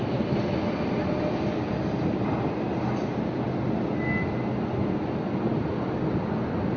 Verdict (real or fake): real